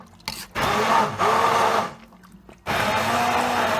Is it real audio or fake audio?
real